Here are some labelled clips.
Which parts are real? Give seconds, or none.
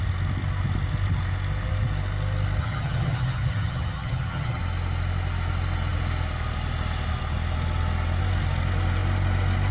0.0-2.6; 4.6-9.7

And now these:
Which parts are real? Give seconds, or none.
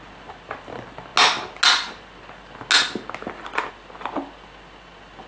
0.0-5.3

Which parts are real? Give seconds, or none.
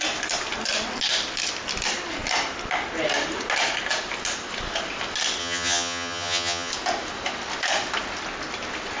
0.0-5.4; 6.7-9.0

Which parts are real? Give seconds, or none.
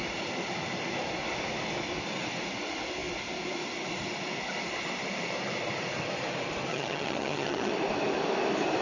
0.0-6.7; 7.7-8.8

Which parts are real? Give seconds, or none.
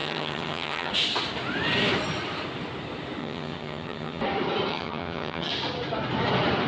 0.9-3.2; 4.2-4.7; 5.5-6.7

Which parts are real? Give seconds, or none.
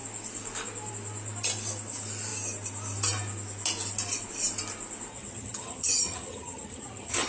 0.0-5.1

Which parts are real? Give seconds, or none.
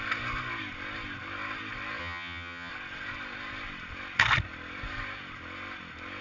0.0-2.0; 2.7-6.2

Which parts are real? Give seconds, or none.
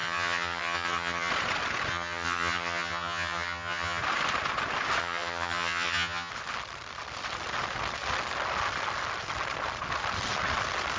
1.3-1.9; 4.0-5.0; 6.3-11.0